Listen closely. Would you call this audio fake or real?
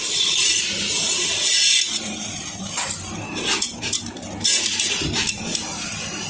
fake